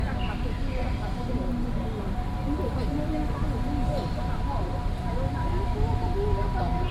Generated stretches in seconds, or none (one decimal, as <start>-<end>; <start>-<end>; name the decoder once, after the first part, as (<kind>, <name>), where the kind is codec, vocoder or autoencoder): 0.8-1.4 (vocoder, BigVGAN v2); 3.9-5.1

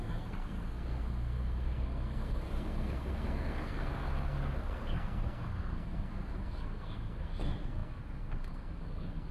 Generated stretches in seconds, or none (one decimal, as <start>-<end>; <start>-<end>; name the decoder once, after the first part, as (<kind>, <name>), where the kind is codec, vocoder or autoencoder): 0.0-9.3 (codec, SNAC)

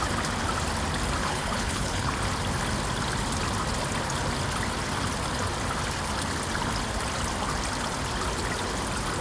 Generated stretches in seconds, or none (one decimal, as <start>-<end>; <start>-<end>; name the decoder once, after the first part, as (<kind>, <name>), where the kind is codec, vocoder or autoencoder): 1.2-2.1 (codec, HILCodec)

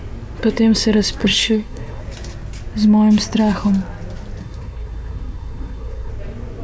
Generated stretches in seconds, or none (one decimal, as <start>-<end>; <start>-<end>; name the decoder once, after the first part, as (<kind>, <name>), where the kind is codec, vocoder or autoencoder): 1.2-2.0 (codec, SNAC); 4.4-6.1

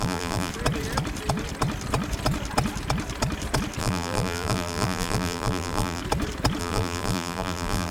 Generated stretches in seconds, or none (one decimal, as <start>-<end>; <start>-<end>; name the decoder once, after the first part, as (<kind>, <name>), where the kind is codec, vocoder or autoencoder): 0.0-0.5 (vocoder, BigVGAN v2); 3.8-6.0; 6.6-7.9

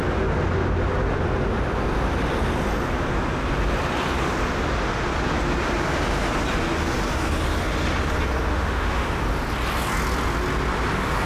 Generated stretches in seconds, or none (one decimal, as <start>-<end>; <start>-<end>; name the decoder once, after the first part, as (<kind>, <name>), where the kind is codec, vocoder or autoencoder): 8.5-9.1 (autoencoder, DAC-VAE)